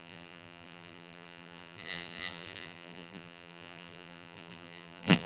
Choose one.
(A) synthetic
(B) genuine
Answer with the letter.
A